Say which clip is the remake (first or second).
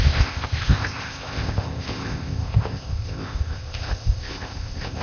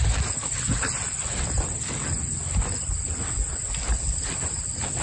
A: first